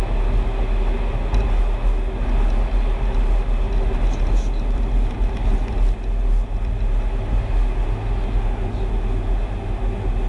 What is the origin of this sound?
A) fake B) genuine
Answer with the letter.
B